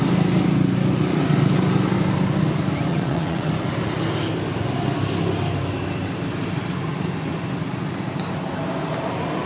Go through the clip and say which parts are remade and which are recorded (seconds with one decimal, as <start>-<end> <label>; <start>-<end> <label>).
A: 0.0-2.9 recorded; 2.9-3.5 remade; 3.5-9.5 recorded